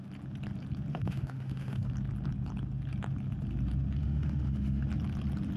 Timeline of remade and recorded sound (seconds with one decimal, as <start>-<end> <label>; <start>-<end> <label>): 0.0-0.9 recorded; 0.9-1.9 remade; 1.9-4.0 recorded; 4.0-4.8 remade; 4.8-5.6 recorded